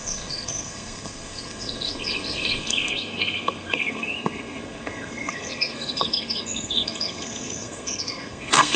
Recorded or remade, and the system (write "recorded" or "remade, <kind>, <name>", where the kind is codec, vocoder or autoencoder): remade, codec, SNAC